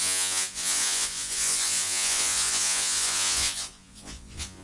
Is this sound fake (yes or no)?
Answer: yes